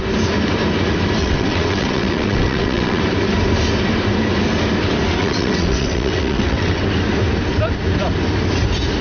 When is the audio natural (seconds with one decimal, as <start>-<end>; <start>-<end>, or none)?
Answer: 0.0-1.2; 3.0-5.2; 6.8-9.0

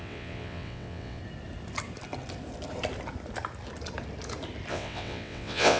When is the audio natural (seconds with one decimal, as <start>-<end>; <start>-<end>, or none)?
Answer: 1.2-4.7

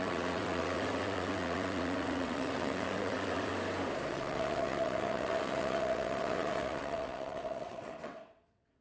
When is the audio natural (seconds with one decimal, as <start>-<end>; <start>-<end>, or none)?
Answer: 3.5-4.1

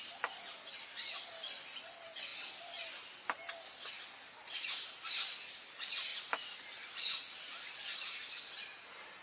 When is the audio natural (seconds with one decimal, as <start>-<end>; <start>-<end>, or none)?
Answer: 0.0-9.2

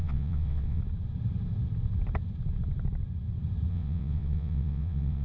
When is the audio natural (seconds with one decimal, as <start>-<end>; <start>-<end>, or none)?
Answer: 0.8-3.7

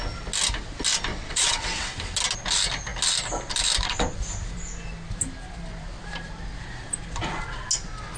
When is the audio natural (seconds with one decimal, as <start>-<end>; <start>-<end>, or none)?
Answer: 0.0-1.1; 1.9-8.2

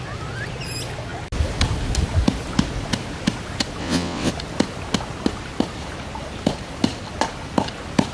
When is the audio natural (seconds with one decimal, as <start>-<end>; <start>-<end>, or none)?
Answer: 0.0-3.8; 4.3-8.1

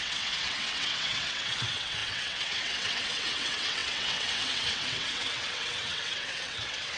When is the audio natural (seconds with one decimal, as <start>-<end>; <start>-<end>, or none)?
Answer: none